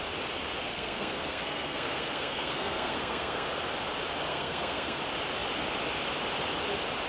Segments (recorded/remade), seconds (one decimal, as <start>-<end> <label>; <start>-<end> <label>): 0.0-0.7 recorded; 0.7-3.5 remade; 3.5-4.3 recorded; 4.3-5.0 remade; 5.0-7.1 recorded